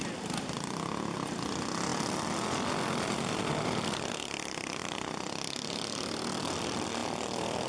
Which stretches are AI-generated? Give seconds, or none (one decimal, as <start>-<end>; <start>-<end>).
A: 0.0-4.8; 6.5-7.7